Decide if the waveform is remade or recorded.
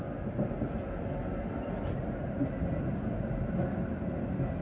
recorded